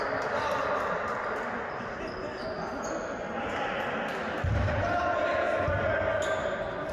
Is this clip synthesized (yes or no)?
no